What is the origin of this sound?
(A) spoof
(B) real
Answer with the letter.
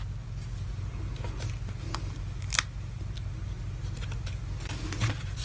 B